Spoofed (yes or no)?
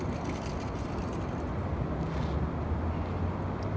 no